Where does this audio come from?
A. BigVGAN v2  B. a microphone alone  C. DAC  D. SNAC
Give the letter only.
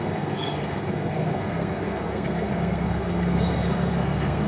D